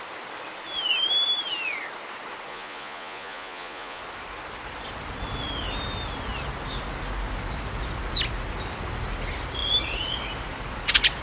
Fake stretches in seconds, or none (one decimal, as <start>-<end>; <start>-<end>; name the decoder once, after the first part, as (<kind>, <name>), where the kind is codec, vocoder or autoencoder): 2.5-4.0 (vocoder, Vocos)